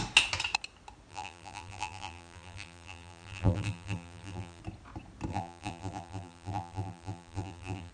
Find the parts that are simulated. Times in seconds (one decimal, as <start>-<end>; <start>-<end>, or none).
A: 1.1-4.6; 5.3-7.9